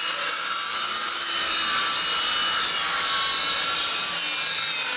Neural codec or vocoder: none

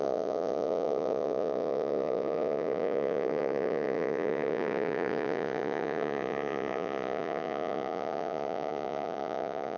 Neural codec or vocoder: vocoder, Vocos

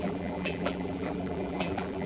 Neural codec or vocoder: vocoder, BigVGAN v2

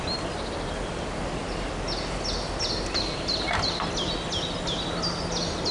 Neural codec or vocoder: none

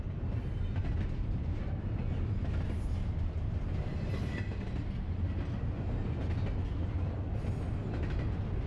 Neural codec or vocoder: none